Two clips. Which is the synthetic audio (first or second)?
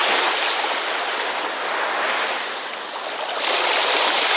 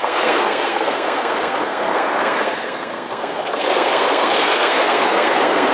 second